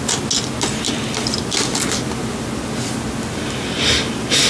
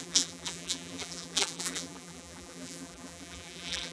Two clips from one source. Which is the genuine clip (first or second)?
first